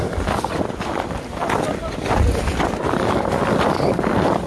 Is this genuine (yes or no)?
yes